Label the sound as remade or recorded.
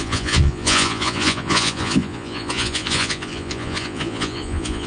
remade